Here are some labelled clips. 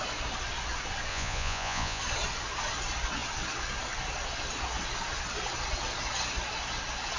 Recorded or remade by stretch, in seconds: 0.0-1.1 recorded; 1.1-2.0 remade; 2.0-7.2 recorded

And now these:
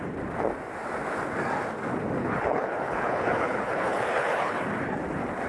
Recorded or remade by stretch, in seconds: 0.0-2.2 recorded; 2.2-4.6 remade; 4.6-5.5 recorded

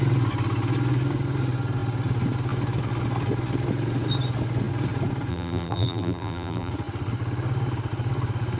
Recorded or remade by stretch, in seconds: 0.0-5.3 recorded; 5.3-6.7 remade; 6.7-8.6 recorded

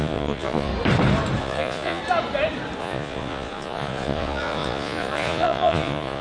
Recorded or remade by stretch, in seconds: 0.0-0.7 remade; 0.7-1.4 recorded; 1.4-2.0 remade; 2.0-2.8 recorded; 2.8-6.2 remade

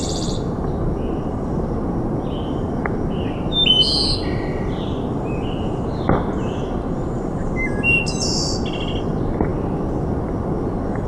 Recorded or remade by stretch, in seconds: 0.0-11.1 recorded

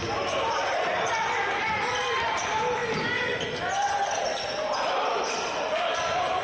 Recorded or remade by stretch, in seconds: 0.0-1.4 remade; 1.4-6.4 recorded